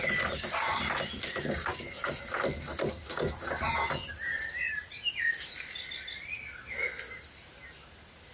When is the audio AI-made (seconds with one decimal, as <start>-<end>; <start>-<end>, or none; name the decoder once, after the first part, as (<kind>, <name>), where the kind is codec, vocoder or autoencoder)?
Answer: none